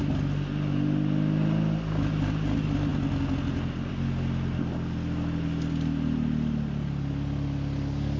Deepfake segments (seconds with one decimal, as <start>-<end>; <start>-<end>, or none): none